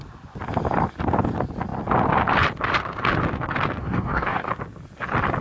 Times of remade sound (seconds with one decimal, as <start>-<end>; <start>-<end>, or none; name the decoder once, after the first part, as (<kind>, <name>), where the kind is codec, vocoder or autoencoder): 3.8-4.5 (codec, DAC)